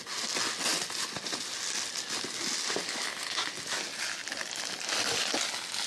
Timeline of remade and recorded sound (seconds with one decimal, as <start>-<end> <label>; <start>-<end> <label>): 0.0-5.9 recorded